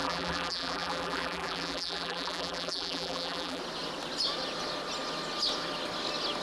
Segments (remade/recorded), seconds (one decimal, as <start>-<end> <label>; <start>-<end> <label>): 0.0-3.6 remade; 3.6-6.4 recorded